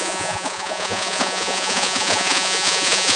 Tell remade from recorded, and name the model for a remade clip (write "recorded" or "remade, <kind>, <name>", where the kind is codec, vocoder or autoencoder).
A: remade, vocoder, Vocos